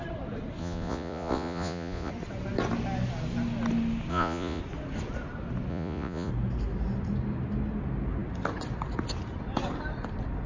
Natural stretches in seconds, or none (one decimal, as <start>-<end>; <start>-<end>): 0.0-0.6; 2.1-4.1; 4.6-5.7; 6.3-10.5